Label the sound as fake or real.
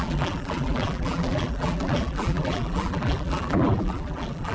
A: fake